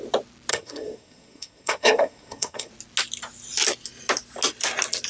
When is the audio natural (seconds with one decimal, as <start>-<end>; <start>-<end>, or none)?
0.0-0.5; 2.7-5.1